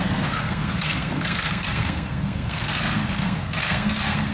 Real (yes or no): no